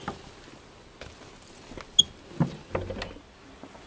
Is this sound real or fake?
real